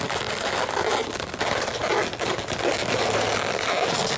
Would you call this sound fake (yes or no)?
no